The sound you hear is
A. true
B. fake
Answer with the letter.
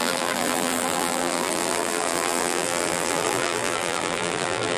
B